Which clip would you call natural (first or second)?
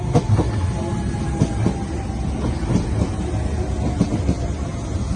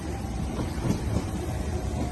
first